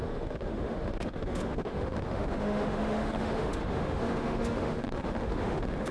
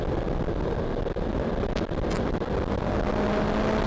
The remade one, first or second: first